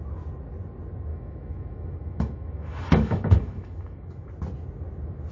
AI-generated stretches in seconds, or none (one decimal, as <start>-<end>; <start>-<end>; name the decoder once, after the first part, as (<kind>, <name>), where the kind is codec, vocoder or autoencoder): 1.1-4.3 (autoencoder, DAC-VAE)